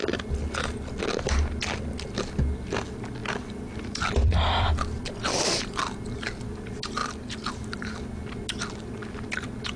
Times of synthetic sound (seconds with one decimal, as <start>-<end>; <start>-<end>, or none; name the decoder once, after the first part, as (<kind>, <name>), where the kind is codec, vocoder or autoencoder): 3.2-4.7 (vocoder, BigVGAN v2)